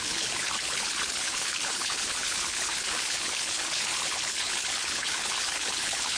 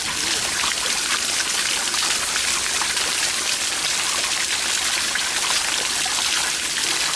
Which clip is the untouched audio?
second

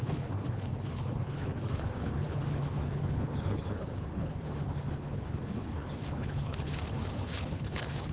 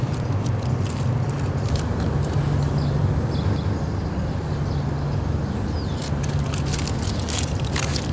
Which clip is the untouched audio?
second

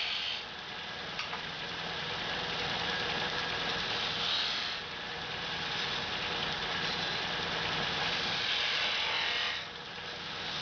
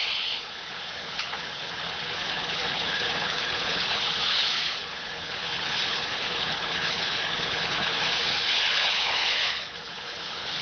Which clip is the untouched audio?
first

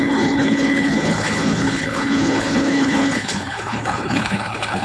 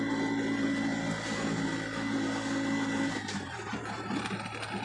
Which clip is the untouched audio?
second